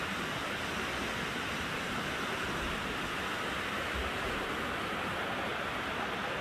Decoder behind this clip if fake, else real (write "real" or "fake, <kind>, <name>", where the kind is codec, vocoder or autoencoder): real